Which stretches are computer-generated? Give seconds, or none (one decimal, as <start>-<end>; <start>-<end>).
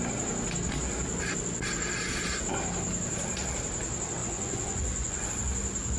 4.2-5.3